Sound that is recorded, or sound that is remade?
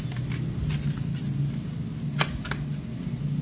recorded